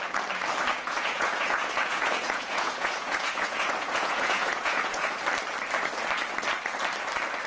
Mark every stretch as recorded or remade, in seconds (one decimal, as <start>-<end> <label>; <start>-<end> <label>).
0.0-0.7 recorded; 0.7-5.1 remade; 5.1-7.5 recorded